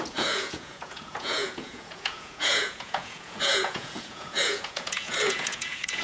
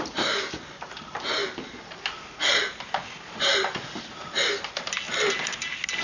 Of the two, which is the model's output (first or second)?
first